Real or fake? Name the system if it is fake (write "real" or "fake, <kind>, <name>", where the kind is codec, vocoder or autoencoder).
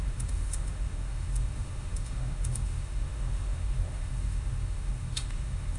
fake, autoencoder, DAC-VAE